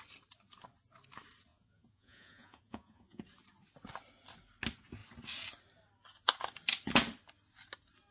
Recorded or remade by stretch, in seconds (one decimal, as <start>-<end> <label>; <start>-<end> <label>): 0.0-1.5 recorded; 1.5-3.2 remade; 3.2-8.1 recorded